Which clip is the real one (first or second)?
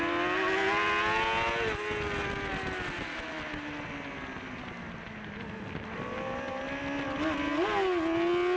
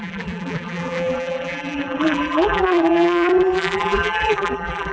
first